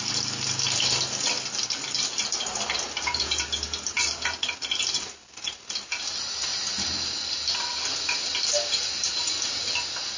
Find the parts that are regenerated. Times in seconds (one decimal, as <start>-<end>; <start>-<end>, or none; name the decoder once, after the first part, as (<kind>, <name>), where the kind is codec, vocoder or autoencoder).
none